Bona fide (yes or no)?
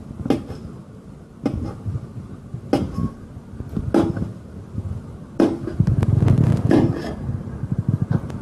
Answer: yes